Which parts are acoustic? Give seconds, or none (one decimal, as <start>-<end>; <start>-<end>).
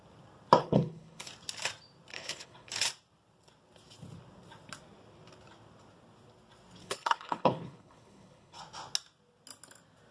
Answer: 0.0-0.6; 1.3-2.1; 2.7-6.8; 8.6-10.1